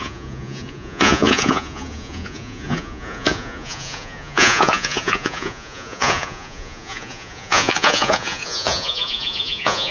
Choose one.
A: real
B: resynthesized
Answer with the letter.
B